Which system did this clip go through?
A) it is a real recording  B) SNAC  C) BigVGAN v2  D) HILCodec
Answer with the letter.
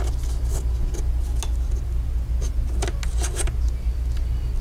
A